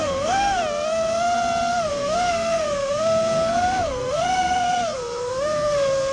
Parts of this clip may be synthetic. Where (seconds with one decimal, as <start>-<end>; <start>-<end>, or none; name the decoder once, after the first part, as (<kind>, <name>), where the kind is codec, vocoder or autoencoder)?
0.0-0.6 (codec, SNAC); 1.9-6.1